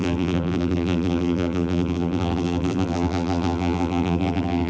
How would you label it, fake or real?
fake